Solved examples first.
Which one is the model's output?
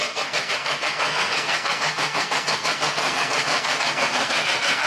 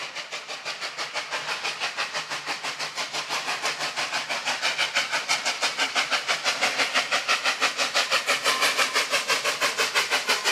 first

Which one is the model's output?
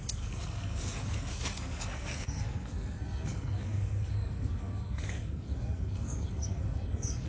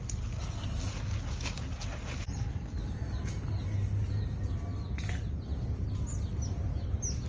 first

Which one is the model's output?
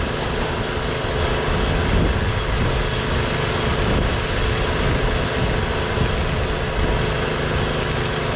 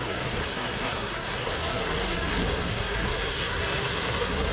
second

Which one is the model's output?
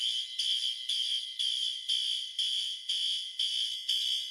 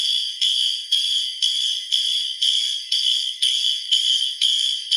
second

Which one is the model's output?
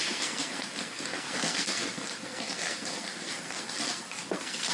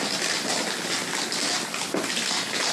first